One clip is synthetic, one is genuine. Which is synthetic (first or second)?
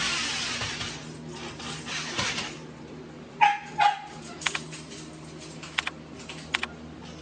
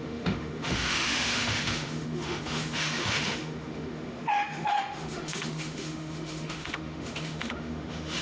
second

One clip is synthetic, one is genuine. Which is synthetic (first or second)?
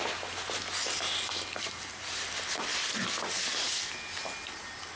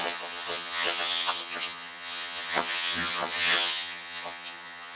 second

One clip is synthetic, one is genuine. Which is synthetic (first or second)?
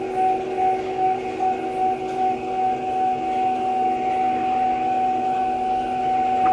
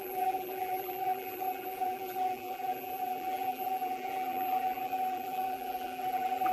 second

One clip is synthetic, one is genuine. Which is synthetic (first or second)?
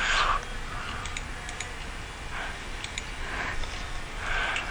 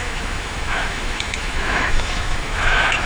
second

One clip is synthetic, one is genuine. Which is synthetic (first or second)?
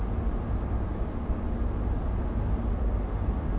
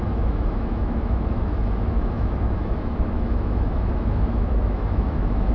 second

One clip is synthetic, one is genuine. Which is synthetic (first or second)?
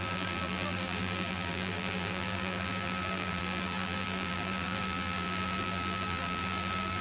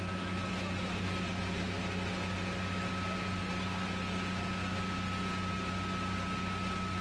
first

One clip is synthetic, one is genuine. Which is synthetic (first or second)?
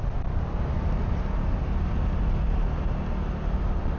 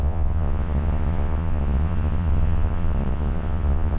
second